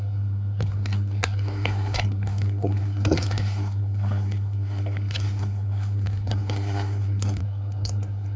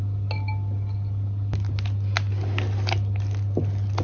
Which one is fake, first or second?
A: first